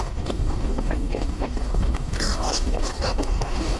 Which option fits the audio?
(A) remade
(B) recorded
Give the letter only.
A